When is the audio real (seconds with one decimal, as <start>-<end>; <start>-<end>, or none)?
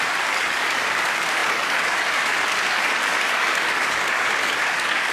none